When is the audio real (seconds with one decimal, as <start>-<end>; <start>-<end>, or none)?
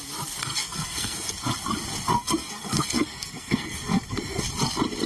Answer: 0.0-0.4; 1.3-2.1; 4.4-5.1